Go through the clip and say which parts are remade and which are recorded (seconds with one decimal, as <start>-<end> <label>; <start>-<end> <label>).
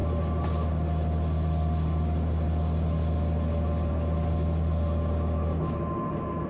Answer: 0.0-6.5 recorded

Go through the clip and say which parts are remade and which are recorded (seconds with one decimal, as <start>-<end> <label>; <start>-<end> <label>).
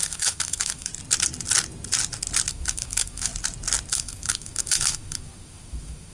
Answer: 0.0-0.9 remade; 0.9-2.5 recorded; 2.5-3.3 remade; 3.3-3.9 recorded; 3.9-6.1 remade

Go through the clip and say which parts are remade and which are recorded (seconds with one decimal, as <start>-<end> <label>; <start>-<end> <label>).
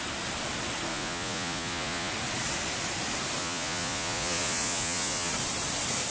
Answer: 0.0-0.9 recorded; 0.9-2.1 remade; 2.1-3.4 recorded; 3.4-5.3 remade; 5.3-6.1 recorded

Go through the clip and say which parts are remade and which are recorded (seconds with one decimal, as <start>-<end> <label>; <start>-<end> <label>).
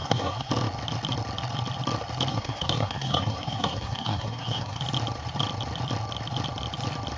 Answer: 0.0-0.5 remade; 0.5-2.3 recorded; 2.3-4.8 remade; 4.8-7.2 recorded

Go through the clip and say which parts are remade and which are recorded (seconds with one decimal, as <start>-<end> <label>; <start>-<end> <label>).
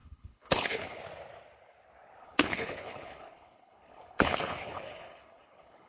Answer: 0.0-1.0 remade; 1.0-2.2 recorded; 2.2-5.9 remade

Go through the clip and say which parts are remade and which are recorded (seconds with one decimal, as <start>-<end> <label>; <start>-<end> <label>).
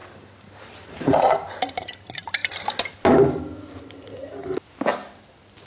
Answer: 0.0-1.6 remade; 1.6-5.7 recorded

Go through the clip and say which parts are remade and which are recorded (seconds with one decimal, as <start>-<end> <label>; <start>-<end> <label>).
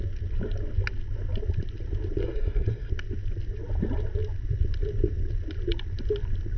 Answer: 0.0-2.2 recorded; 2.2-2.9 remade; 2.9-6.6 recorded